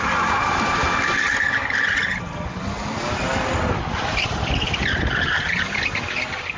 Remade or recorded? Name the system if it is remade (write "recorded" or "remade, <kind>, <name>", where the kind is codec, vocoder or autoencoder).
recorded